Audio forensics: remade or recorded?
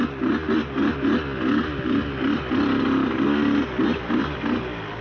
recorded